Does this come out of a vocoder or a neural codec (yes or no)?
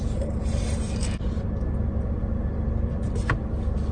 no